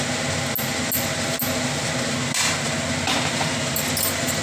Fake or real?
real